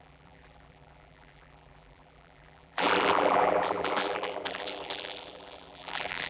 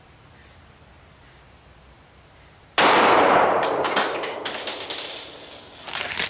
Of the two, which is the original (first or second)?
second